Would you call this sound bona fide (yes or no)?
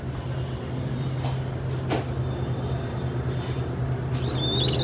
yes